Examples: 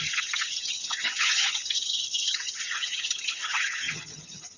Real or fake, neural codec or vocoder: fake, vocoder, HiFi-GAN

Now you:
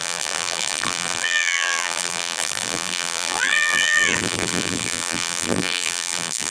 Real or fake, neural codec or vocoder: fake, vocoder, BigVGAN v2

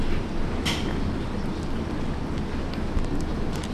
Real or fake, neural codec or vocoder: real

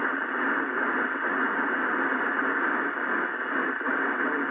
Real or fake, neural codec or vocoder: real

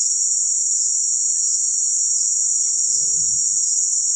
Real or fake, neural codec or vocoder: real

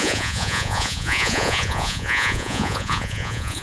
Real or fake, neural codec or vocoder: fake, vocoder, Vocos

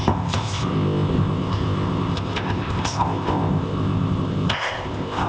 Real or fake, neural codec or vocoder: fake, codec, ZipCodec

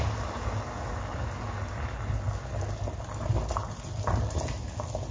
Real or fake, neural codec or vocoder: real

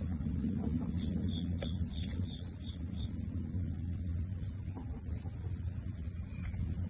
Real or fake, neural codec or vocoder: fake, vocoder, Vocos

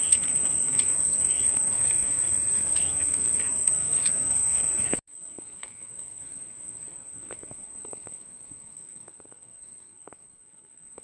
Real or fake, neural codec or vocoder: fake, codec, SNAC